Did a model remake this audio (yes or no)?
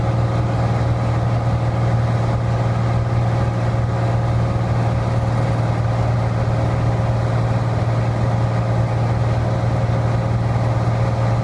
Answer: no